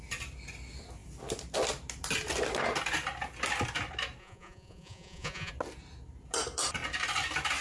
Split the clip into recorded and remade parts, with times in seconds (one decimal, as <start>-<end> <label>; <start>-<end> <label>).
0.0-4.2 recorded; 4.2-5.5 remade; 5.5-7.6 recorded